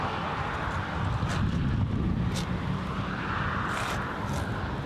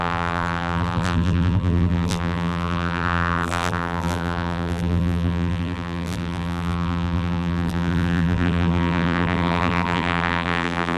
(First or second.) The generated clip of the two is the second